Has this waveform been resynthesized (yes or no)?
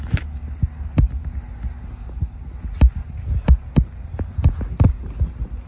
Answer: no